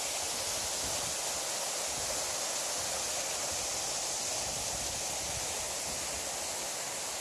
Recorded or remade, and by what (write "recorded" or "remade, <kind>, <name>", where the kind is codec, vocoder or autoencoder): recorded